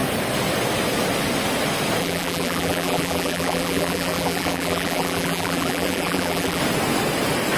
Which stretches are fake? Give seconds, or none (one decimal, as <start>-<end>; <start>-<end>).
2.0-6.6